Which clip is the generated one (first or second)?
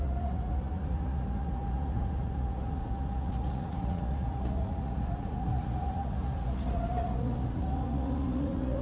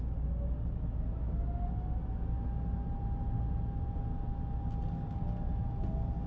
first